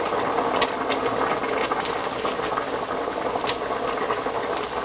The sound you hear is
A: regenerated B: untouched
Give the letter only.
B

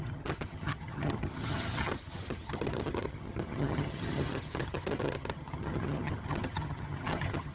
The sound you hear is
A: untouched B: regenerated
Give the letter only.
B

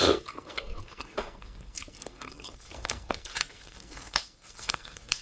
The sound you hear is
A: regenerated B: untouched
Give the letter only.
A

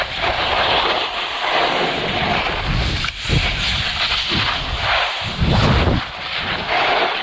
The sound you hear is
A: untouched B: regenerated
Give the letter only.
A